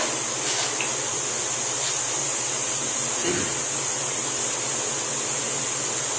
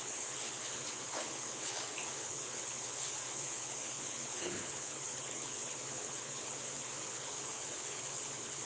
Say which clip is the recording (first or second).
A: first